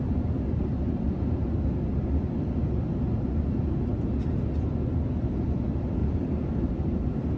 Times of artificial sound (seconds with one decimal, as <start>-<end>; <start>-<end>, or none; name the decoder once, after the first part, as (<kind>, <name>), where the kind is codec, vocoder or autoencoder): 6.0-6.7 (vocoder, BigVGAN v2)